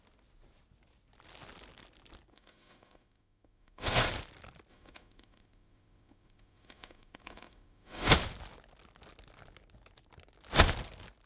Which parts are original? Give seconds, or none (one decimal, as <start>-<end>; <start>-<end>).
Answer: 0.0-2.3; 4.1-4.7; 8.1-11.3